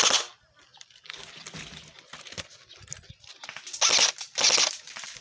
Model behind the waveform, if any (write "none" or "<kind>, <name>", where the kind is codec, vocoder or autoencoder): none